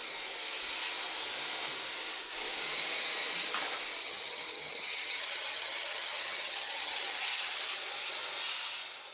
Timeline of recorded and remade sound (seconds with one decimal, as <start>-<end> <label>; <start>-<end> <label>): 0.0-4.0 recorded; 4.0-7.6 remade; 7.6-9.1 recorded